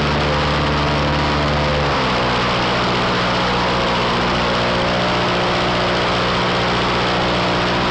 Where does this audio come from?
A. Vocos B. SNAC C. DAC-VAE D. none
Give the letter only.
D